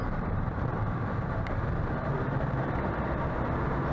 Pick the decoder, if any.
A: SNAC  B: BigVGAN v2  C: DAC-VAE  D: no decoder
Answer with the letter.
B